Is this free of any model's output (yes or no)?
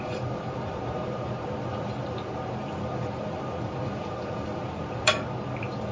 no